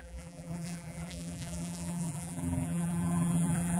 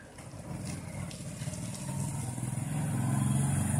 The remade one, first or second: first